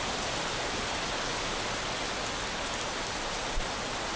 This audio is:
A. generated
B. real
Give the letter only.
B